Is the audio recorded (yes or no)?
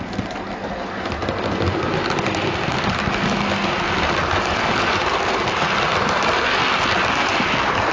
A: yes